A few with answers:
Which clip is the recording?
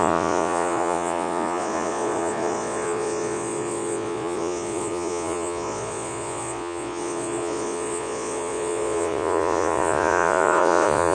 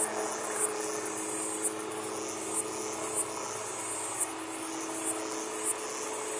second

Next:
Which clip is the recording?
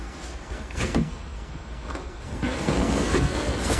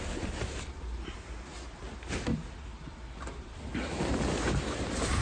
second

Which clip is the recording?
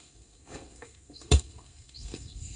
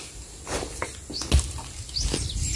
second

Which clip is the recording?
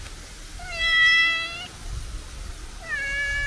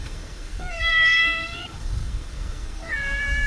first